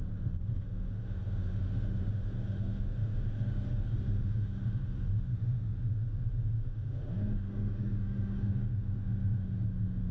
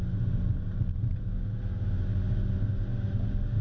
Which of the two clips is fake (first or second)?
first